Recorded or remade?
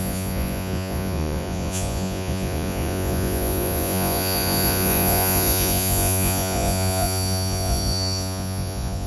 remade